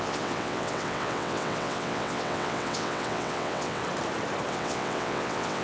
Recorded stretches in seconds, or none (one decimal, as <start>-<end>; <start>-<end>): 3.8-4.5